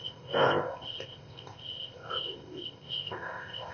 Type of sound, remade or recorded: remade